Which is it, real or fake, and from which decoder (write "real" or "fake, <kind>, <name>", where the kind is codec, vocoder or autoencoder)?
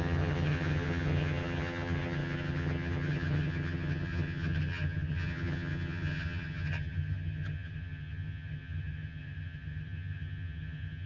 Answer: fake, vocoder, HiFi-GAN